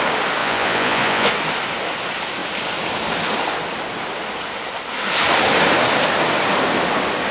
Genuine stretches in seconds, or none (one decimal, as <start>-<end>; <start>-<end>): 0.0-0.4; 1.3-7.3